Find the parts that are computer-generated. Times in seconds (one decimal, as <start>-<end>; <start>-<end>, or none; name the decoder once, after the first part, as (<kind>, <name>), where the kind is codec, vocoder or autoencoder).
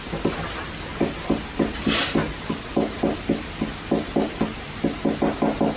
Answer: none